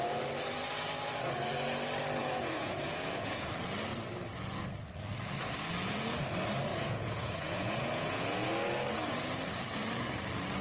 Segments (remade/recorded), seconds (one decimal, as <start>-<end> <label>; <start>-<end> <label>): 0.0-2.2 recorded; 2.2-3.5 remade; 3.5-6.7 recorded; 6.7-8.5 remade; 8.5-10.6 recorded